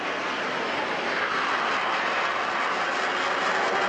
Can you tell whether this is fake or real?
real